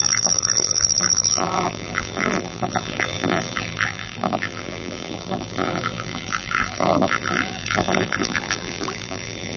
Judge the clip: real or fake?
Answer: fake